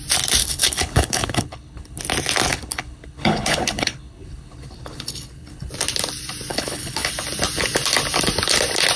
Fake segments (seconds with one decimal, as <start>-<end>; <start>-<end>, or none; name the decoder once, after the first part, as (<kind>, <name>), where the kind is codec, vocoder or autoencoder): 0.4-2.0 (codec, HILCodec); 2.5-5.7; 6.5-7.1